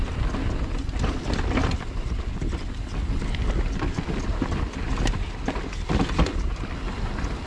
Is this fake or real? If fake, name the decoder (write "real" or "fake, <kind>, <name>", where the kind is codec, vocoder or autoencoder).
real